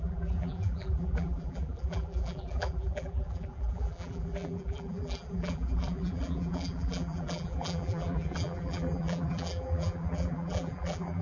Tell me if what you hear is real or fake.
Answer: fake